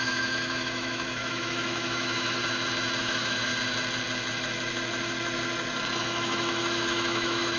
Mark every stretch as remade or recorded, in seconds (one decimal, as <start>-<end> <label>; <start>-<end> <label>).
0.0-2.4 remade; 2.4-3.0 recorded; 3.0-3.5 remade; 3.5-6.0 recorded; 6.0-7.6 remade